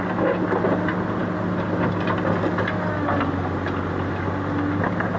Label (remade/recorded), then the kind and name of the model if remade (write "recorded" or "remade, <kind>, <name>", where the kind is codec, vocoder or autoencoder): recorded